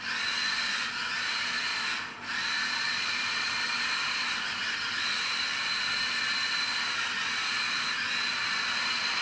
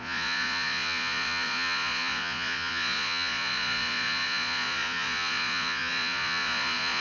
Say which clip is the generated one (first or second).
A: second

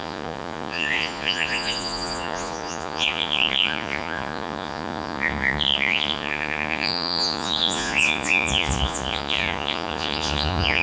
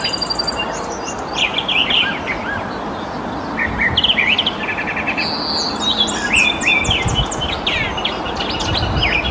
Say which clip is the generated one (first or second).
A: first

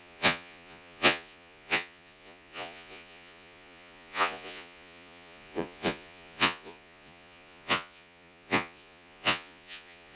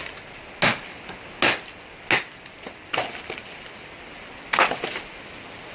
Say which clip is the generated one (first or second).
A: first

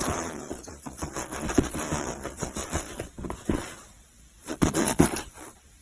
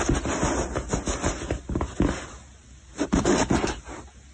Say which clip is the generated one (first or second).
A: first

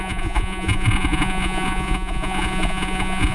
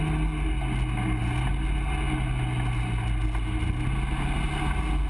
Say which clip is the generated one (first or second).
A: first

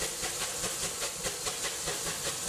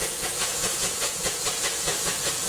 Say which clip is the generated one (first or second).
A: second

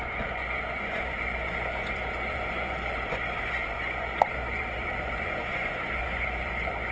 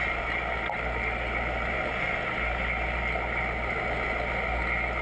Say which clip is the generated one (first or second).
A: first